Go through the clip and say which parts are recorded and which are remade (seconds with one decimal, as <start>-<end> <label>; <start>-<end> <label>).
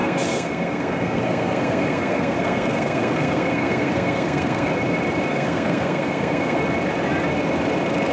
0.0-4.7 remade; 4.7-5.3 recorded; 5.3-6.6 remade; 6.6-8.1 recorded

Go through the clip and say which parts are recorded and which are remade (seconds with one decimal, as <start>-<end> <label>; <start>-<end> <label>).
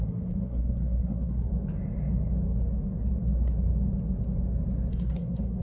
0.0-1.5 remade; 1.5-4.9 recorded; 4.9-5.6 remade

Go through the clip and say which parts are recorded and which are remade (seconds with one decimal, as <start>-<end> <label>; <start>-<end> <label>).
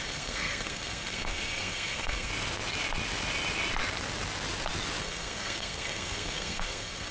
0.0-2.3 remade; 2.3-5.0 recorded; 5.0-7.1 remade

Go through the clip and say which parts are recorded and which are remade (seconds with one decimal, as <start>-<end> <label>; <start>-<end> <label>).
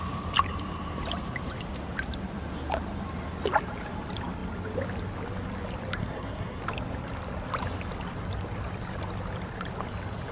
0.0-6.0 recorded; 6.0-6.6 remade; 6.6-10.3 recorded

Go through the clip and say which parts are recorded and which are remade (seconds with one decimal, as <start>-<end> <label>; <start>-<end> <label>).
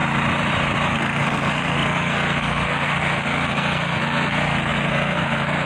0.0-0.9 recorded; 0.9-5.7 remade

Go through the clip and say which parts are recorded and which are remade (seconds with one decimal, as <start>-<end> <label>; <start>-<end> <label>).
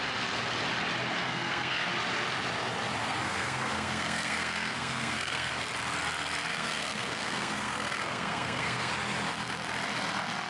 0.0-1.2 recorded; 1.2-1.9 remade; 1.9-3.0 recorded; 3.0-5.5 remade; 5.5-6.5 recorded; 6.5-8.9 remade; 8.9-10.5 recorded